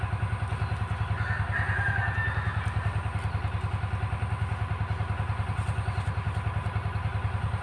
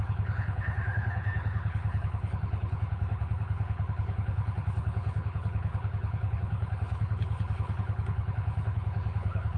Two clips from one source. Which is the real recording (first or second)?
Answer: first